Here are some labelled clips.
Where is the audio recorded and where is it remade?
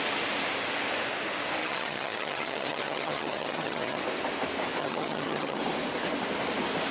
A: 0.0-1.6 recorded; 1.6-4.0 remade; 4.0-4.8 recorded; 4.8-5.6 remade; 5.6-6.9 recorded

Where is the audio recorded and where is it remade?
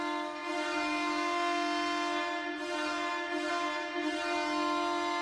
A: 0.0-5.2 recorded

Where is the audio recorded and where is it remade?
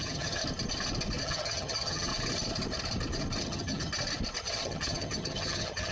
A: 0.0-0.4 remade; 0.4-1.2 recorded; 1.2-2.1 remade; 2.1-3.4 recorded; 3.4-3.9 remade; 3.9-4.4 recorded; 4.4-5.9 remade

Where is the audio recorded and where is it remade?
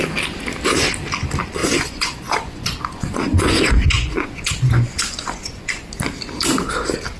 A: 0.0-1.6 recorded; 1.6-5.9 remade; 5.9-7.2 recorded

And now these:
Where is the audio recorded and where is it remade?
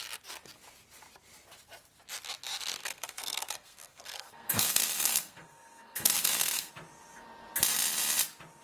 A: 0.0-2.8 recorded; 2.8-6.7 remade; 6.7-8.6 recorded